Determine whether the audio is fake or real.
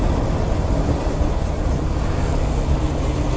real